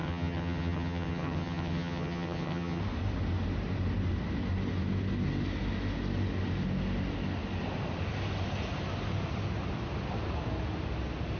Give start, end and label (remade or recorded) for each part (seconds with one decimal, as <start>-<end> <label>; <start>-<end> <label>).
0.0-2.8 remade; 2.8-11.4 recorded